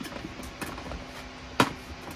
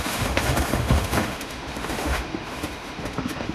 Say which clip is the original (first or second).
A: first